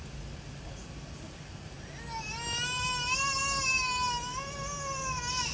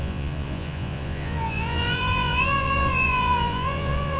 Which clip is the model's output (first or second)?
second